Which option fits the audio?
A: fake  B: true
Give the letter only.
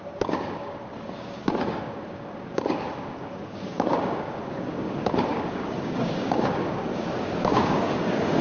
A